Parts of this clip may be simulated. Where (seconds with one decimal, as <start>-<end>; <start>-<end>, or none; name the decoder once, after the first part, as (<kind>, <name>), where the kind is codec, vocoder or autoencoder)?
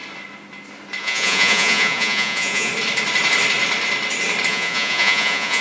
1.0-2.7 (vocoder, Vocos); 4.5-5.6